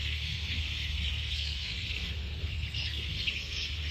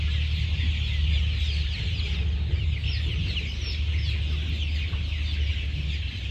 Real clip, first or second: second